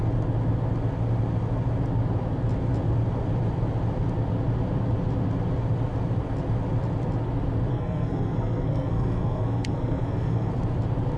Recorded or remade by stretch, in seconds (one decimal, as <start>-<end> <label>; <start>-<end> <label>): 0.0-7.7 recorded; 7.7-10.5 remade; 10.5-11.2 recorded